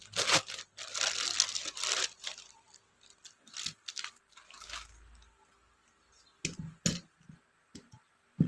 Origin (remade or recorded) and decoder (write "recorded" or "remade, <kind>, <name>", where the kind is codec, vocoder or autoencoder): recorded